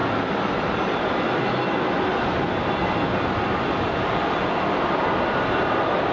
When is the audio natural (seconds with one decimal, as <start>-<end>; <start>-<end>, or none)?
0.0-6.1